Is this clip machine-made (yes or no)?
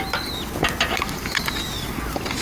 no